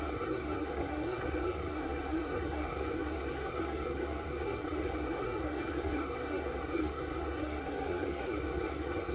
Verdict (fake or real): fake